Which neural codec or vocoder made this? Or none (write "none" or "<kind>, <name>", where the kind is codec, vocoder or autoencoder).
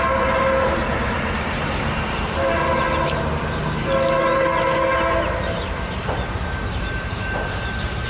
vocoder, BigVGAN v2